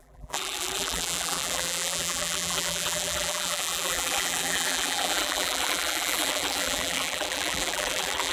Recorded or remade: remade